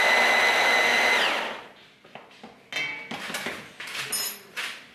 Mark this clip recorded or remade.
recorded